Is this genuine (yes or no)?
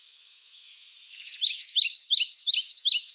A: no